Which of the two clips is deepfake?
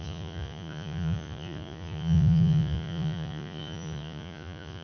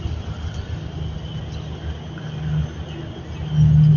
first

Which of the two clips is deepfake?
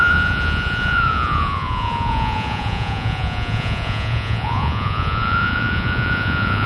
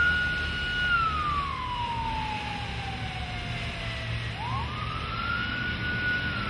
first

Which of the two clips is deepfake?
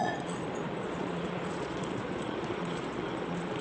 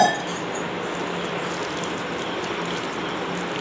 first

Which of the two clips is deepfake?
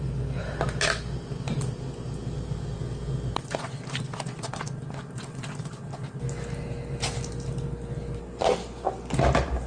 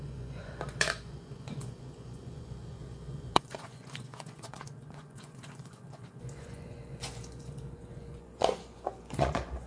second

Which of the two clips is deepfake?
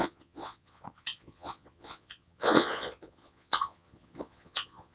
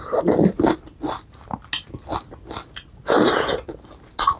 first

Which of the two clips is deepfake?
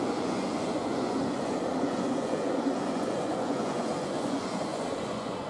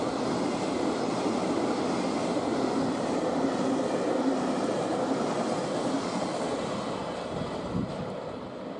first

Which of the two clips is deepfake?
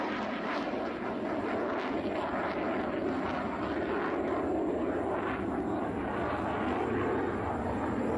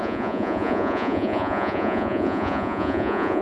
second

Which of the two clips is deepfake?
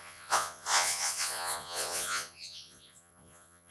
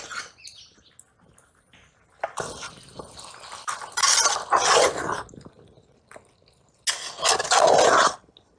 first